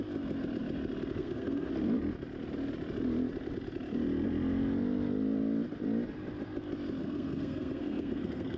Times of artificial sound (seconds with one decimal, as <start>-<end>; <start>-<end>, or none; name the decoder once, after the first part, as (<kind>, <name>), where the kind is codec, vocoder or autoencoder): 1.2-1.7 (codec, SNAC); 7.0-8.6